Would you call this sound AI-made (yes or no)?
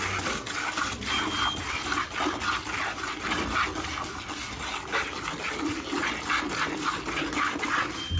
no